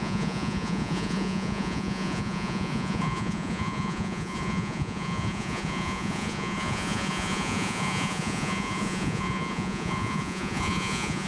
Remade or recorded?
remade